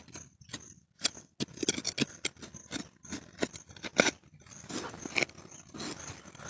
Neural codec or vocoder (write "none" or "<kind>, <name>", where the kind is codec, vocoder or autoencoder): none